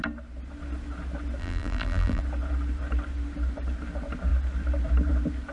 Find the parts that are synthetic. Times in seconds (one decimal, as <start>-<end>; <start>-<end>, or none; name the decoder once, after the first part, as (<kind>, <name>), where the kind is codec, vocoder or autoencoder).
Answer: 1.4-2.2 (vocoder, BigVGAN v2)